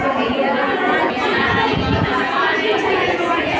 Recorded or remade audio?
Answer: remade